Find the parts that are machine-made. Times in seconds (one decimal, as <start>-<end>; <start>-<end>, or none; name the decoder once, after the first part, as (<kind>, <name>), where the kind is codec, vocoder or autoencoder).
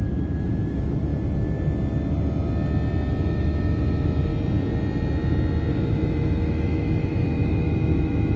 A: 0.0-1.1 (autoencoder, DAC-VAE); 3.1-4.3; 5.7-8.4